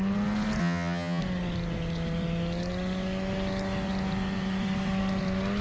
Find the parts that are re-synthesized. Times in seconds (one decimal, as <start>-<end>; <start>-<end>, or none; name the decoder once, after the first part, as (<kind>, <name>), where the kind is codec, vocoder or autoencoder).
0.6-1.2 (vocoder, HiFi-GAN)

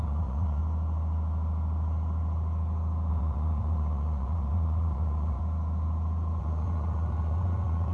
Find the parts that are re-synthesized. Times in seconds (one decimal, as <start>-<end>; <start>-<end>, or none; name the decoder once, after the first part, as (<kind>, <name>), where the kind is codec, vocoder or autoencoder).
0.0-0.6 (vocoder, Vocos); 3.1-5.4; 6.4-7.9

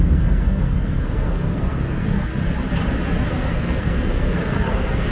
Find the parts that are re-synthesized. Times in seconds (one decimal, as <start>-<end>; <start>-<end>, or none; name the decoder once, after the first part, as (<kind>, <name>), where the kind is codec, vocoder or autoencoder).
0.0-2.3 (codec, SNAC); 3.3-5.1

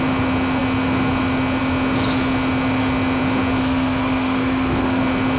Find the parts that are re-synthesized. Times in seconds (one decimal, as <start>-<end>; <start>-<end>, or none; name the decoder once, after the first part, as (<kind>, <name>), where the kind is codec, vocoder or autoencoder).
3.6-5.0 (codec, SNAC)

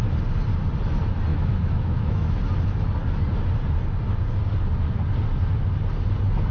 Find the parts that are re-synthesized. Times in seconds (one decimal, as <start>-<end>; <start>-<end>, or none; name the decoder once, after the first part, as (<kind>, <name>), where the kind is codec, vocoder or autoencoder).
1.3-2.4 (autoencoder, DAC-VAE)

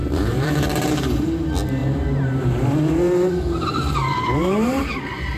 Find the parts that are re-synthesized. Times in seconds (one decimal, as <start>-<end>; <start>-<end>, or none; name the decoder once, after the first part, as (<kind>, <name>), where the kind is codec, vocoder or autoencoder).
0.0-1.3 (vocoder, BigVGAN v2); 1.8-5.0

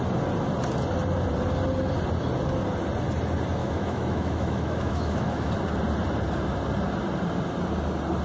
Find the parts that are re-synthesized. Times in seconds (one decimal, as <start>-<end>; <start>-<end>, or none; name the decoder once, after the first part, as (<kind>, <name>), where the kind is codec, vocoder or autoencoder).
3.6-5.5 (autoencoder, DAC-VAE)